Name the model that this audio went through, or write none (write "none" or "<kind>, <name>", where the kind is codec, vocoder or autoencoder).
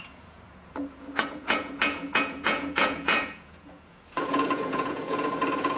vocoder, Vocos